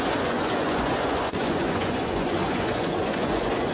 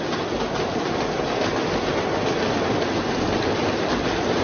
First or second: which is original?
second